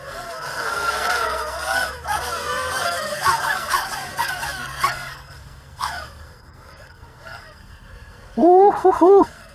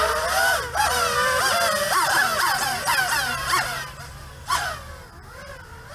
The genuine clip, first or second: second